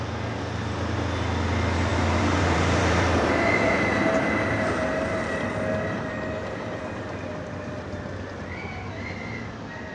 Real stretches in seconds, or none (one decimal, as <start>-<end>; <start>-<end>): 0.0-1.9; 5.5-9.9